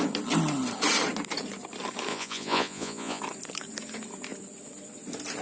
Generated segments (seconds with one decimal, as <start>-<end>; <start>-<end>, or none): 2.1-3.2